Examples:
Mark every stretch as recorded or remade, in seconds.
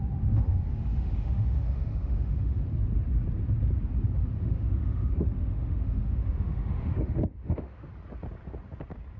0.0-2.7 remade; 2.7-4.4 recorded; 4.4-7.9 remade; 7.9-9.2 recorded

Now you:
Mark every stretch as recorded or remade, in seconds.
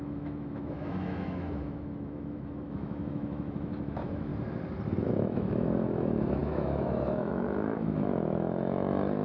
0.0-4.3 remade; 4.3-4.9 recorded; 4.9-9.2 remade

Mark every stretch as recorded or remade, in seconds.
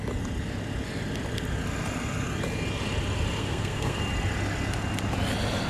0.0-3.4 recorded; 3.4-4.0 remade; 4.0-5.7 recorded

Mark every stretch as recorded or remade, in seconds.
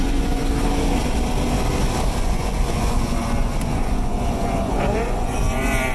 0.0-0.4 remade; 0.4-2.2 recorded; 2.2-5.9 remade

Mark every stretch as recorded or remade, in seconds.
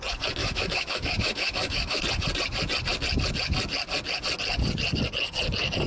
0.0-0.4 recorded; 0.4-2.0 remade; 2.0-5.9 recorded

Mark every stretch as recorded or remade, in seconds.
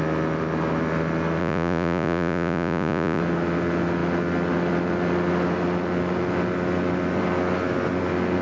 0.0-1.4 recorded; 1.4-3.2 remade; 3.2-8.4 recorded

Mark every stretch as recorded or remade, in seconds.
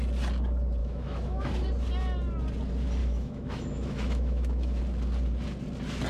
0.0-0.8 recorded; 0.8-1.5 remade; 1.5-3.0 recorded; 3.0-4.8 remade; 4.8-6.1 recorded